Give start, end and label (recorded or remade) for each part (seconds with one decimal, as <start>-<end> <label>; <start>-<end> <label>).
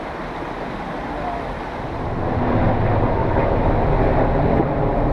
0.0-3.2 recorded; 3.2-3.8 remade; 3.8-5.1 recorded